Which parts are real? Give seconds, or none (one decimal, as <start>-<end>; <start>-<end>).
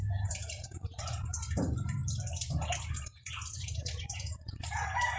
none